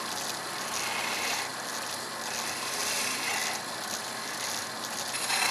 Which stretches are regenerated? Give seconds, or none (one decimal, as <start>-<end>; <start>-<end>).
none